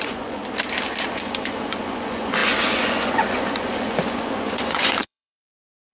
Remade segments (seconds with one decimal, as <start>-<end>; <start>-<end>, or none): 0.0-0.4; 1.1-5.9